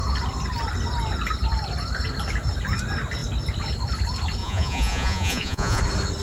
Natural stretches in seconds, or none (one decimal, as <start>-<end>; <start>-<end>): 0.0-4.4; 5.8-6.2